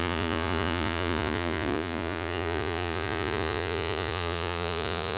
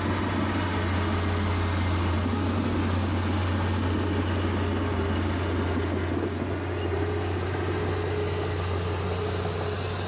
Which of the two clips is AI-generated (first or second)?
first